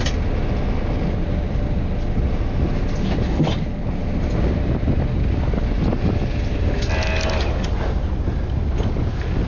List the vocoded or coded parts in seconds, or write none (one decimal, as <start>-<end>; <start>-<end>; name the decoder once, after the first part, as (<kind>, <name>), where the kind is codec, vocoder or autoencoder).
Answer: none